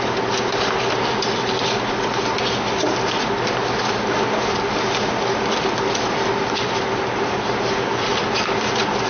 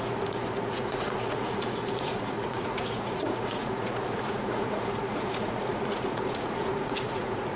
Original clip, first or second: first